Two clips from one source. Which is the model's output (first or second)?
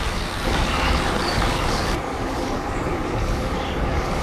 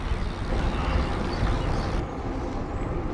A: first